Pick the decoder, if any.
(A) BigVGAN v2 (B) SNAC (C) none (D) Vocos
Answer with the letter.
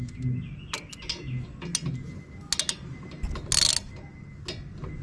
C